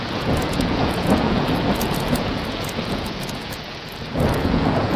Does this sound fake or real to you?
fake